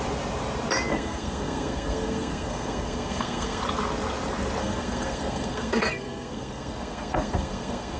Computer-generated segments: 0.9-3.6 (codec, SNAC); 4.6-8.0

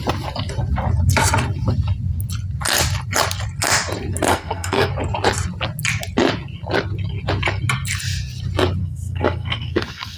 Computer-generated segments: 4.3-4.9 (codec, SNAC); 8.8-10.2